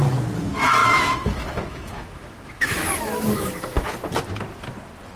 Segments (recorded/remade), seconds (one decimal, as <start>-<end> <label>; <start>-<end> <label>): 0.0-0.8 recorded; 0.8-3.9 remade; 3.9-5.2 recorded